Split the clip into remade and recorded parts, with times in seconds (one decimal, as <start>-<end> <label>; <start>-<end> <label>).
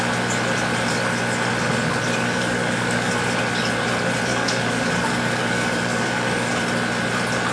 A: 0.0-2.2 recorded; 2.2-3.1 remade; 3.1-4.3 recorded; 4.3-6.6 remade; 6.6-7.5 recorded